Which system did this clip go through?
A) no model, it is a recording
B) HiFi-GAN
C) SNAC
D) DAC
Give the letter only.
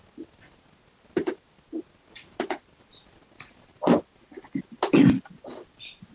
A